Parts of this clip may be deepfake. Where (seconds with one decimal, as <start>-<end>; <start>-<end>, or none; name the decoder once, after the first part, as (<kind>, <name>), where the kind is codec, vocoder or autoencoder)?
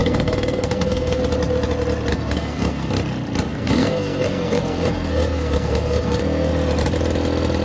0.0-1.2 (codec, SNAC); 2.1-2.9; 3.5-6.5